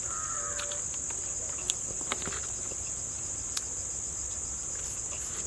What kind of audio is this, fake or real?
real